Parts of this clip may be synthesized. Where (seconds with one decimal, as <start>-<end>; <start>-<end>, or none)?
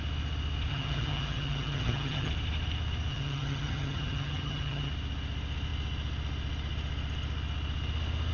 0.7-2.3; 3.1-4.9